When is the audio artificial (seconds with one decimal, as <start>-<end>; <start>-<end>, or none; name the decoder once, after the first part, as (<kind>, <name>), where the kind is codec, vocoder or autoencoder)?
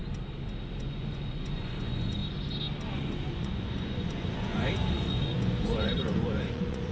0.8-2.2 (vocoder, Vocos); 2.9-6.9